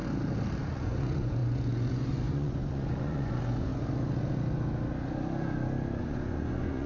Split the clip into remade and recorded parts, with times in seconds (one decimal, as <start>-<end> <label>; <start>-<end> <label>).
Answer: 0.0-0.7 recorded; 0.7-3.7 remade; 3.7-6.0 recorded; 6.0-6.9 remade